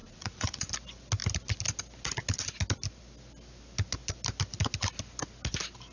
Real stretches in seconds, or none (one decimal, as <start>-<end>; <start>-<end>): 0.7-5.9